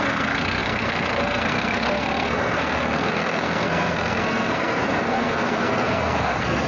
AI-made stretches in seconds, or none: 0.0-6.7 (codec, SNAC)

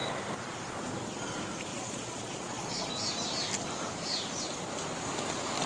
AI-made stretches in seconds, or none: 1.7-2.9 (vocoder, Vocos)

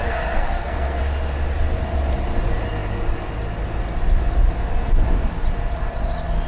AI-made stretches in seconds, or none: 0.0-1.0 (codec, SNAC)

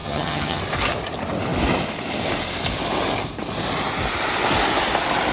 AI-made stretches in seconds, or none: 0.0-0.6 (vocoder, HiFi-GAN)

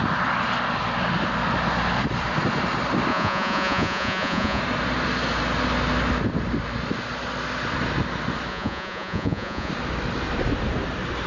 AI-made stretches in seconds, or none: 3.1-4.6 (vocoder, Vocos); 8.5-9.7

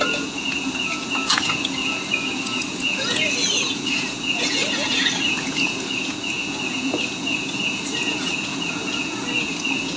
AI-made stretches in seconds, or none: 0.0-10.0 (vocoder, Vocos)

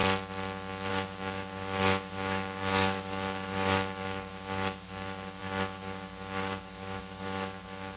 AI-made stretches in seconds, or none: 0.9-8.0 (codec, DAC)

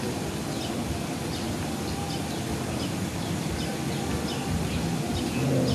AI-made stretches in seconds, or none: 3.1-3.7 (vocoder, BigVGAN v2)